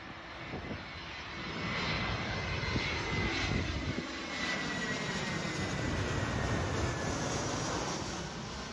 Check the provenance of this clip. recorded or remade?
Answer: recorded